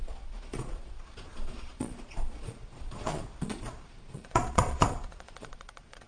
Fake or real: fake